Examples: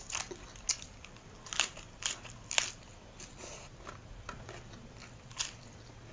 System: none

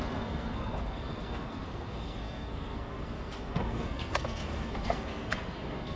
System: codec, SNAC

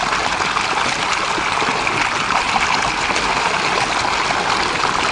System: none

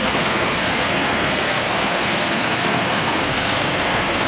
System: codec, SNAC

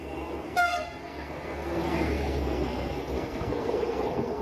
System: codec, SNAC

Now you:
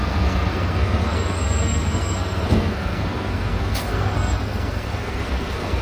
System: codec, SNAC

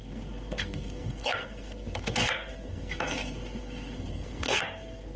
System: codec, SNAC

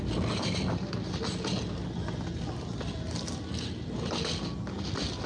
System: none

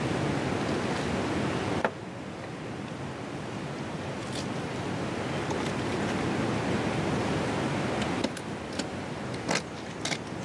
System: none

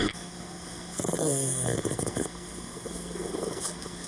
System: codec, SNAC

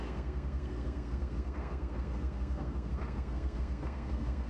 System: codec, SNAC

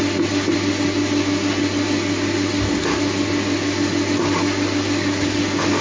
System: none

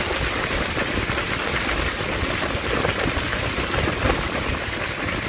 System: none